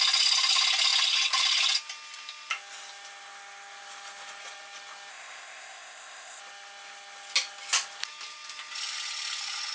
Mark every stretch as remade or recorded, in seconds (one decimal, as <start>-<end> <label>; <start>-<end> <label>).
0.0-5.1 recorded; 5.1-6.4 remade; 6.4-9.7 recorded